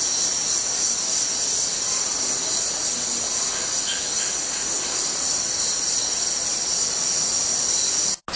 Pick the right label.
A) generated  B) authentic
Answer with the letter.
B